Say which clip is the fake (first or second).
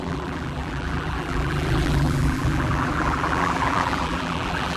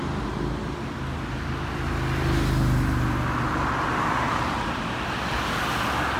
first